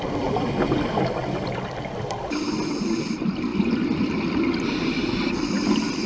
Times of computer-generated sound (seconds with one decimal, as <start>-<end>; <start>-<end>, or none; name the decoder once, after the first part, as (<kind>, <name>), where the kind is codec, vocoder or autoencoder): none